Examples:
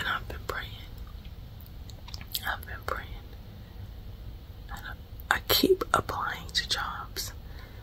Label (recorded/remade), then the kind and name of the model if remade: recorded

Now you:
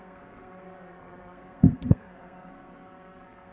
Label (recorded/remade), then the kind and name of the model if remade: remade, codec, SNAC